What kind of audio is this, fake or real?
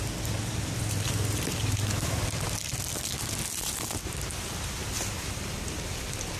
real